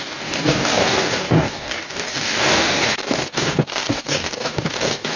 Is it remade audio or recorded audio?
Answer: remade